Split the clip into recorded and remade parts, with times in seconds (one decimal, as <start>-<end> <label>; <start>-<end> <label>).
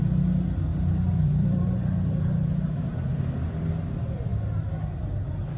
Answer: 0.0-0.7 recorded; 0.7-3.7 remade; 3.7-5.6 recorded